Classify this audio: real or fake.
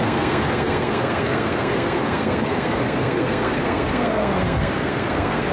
fake